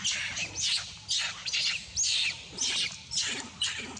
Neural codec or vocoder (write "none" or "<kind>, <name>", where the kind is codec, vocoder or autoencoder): none